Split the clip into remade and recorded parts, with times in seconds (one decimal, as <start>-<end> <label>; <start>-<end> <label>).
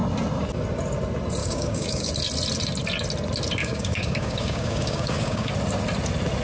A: 0.0-1.4 recorded; 1.4-2.1 remade; 2.1-3.6 recorded; 3.6-5.5 remade; 5.5-6.4 recorded